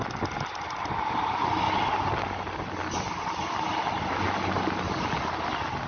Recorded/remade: recorded